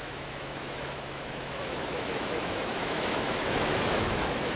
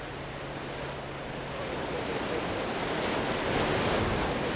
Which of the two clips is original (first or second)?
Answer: second